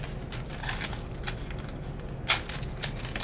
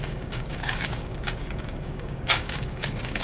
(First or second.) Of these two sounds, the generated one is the second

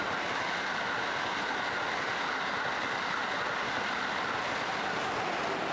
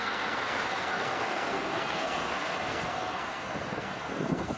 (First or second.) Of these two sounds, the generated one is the second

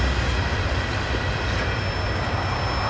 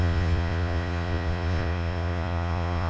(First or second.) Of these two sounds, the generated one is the second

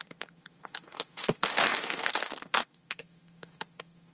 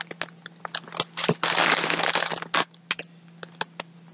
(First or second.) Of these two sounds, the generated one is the first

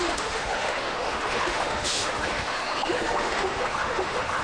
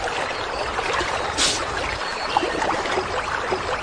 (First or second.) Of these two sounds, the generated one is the first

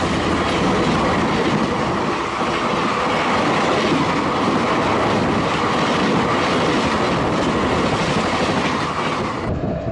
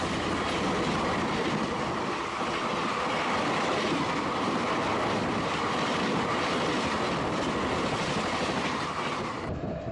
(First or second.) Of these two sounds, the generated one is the second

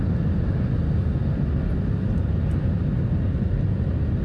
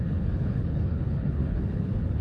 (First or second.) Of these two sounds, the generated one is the second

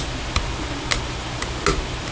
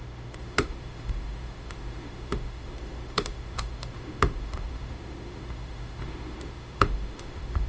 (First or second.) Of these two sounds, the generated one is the second